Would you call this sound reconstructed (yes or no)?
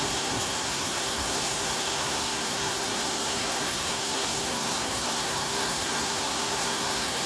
yes